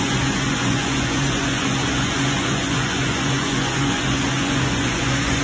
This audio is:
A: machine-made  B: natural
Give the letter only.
A